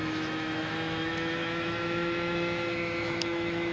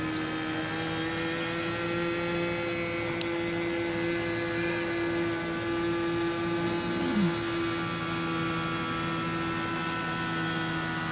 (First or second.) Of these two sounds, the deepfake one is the first